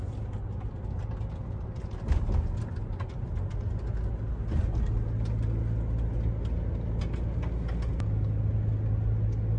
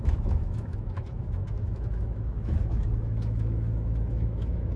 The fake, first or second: second